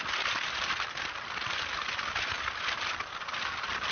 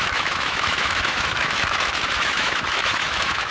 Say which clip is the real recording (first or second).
first